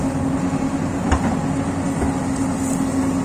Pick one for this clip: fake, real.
real